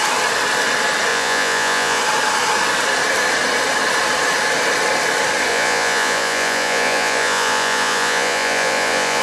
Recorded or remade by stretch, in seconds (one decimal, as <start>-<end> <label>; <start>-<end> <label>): 0.0-1.1 recorded; 1.1-2.0 remade; 2.0-5.5 recorded; 5.5-9.2 remade

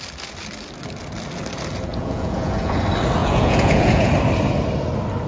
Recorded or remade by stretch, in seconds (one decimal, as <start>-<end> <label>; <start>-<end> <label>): 0.0-1.9 recorded; 1.9-2.8 remade; 2.8-3.2 recorded; 3.2-4.1 remade; 4.1-5.3 recorded

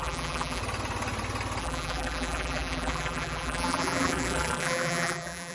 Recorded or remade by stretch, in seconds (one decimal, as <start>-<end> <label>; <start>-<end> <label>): 0.0-0.6 remade; 0.6-1.6 recorded; 1.6-5.5 remade